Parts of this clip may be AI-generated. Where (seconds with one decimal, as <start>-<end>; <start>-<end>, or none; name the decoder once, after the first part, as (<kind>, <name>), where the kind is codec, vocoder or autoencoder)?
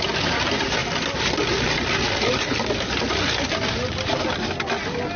none